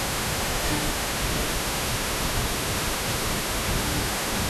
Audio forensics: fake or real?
fake